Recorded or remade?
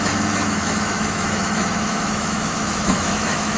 remade